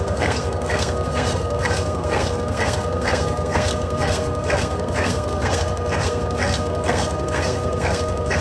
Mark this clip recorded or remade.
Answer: remade